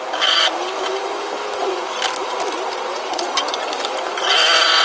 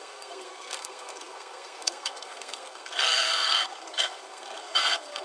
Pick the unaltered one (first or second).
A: first